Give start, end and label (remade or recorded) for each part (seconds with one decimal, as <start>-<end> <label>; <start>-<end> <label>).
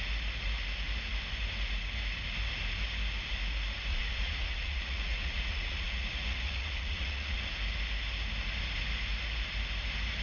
0.0-3.9 recorded; 3.9-7.5 remade; 7.5-10.2 recorded